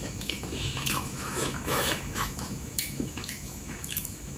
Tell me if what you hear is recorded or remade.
remade